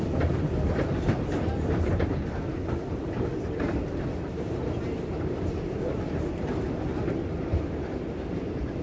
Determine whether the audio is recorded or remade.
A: remade